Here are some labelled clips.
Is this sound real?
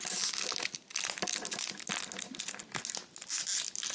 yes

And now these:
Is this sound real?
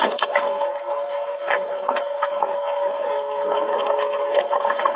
no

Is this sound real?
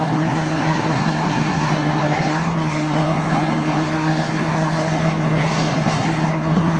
no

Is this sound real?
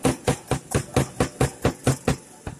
yes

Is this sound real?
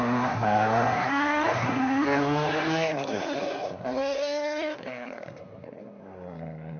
no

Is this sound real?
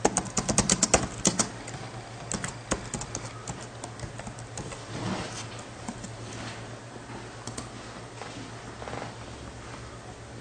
yes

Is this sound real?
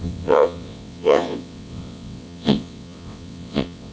no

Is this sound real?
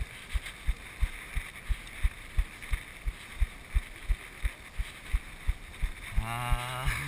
yes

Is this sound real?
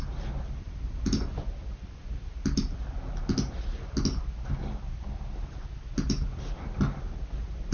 yes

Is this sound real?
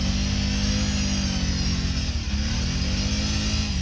yes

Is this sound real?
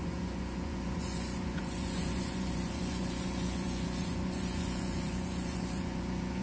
no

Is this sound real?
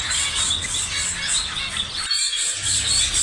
yes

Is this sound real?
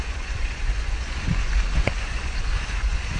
no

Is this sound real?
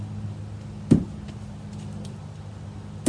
yes